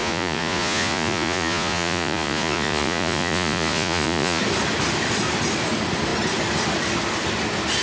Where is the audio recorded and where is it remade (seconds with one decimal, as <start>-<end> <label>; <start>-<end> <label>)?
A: 0.0-4.4 remade; 4.4-7.8 recorded